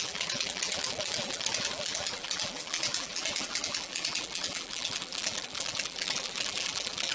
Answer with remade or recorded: remade